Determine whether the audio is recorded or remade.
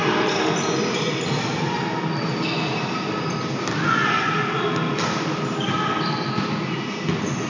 recorded